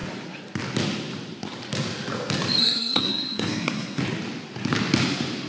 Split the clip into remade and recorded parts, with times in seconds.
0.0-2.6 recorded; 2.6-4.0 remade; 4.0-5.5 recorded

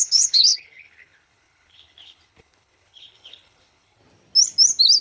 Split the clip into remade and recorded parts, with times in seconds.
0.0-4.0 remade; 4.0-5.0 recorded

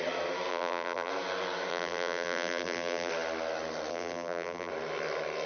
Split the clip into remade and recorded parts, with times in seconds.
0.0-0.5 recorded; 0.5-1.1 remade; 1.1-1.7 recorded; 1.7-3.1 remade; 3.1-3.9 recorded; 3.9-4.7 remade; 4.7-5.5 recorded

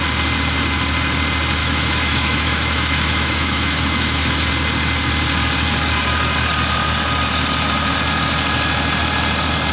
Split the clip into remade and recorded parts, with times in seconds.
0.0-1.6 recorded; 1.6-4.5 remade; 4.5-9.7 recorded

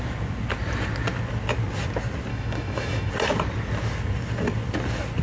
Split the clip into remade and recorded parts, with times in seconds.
0.0-2.3 recorded; 2.3-3.1 remade; 3.1-5.2 recorded

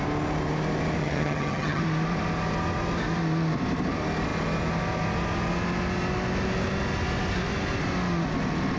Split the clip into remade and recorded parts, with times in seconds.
0.0-1.0 recorded; 1.0-1.8 remade; 1.8-8.8 recorded